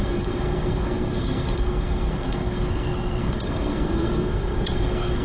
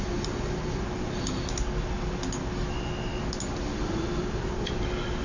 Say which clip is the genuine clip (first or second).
second